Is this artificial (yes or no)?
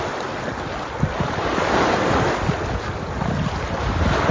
no